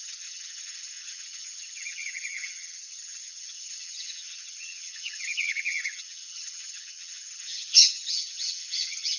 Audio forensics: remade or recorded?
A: remade